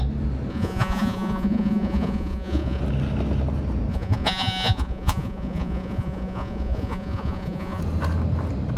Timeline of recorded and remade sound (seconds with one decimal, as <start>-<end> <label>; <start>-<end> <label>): 0.0-0.5 recorded; 0.5-2.8 remade; 2.8-3.9 recorded; 3.9-7.8 remade; 7.8-8.8 recorded

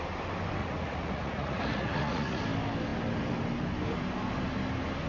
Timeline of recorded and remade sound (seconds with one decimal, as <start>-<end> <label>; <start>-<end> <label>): 0.0-0.6 recorded; 0.6-2.4 remade; 2.4-5.1 recorded

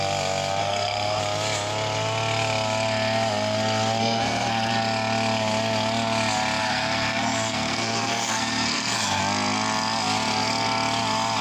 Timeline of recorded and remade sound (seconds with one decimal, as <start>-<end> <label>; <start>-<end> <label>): 0.0-0.6 recorded; 0.6-1.2 remade; 1.2-4.0 recorded; 4.0-4.7 remade; 4.7-6.6 recorded; 6.6-9.2 remade; 9.2-11.4 recorded

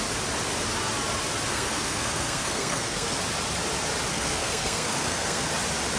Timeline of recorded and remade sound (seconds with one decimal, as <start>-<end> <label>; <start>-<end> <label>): 0.0-1.5 recorded; 1.5-3.2 remade; 3.2-4.1 recorded; 4.1-5.5 remade; 5.5-6.0 recorded